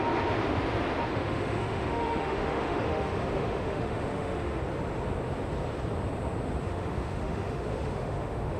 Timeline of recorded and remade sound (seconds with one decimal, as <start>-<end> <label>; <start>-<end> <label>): 0.0-1.1 recorded; 1.1-4.6 remade; 4.6-6.6 recorded; 6.6-8.6 remade